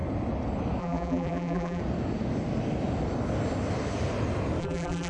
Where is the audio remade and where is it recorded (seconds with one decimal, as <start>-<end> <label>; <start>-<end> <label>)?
0.0-0.8 recorded; 0.8-1.8 remade; 1.8-4.6 recorded; 4.6-5.1 remade